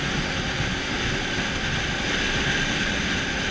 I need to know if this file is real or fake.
fake